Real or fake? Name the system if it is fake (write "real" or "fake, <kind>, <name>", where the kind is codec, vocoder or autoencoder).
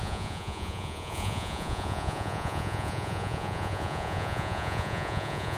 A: fake, vocoder, Vocos